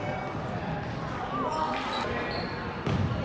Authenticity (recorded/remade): recorded